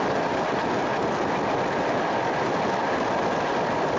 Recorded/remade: recorded